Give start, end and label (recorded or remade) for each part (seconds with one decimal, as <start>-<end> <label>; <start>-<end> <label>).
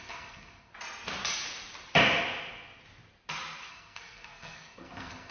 0.0-0.7 remade; 0.7-3.7 recorded; 3.7-5.3 remade